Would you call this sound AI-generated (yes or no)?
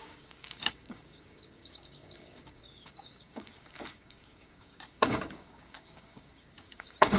yes